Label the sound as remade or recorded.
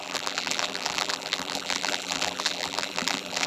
remade